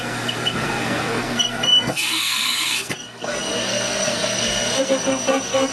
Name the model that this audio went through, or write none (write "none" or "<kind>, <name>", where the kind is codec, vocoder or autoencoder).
codec, SNAC